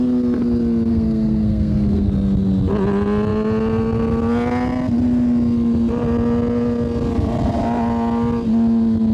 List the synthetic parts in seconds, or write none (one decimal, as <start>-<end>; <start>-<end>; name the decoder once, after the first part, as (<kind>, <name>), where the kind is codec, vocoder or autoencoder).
0.9-2.1 (codec, SNAC)